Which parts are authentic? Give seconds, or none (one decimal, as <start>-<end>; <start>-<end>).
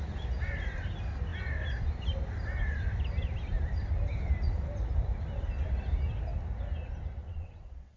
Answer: 0.0-7.2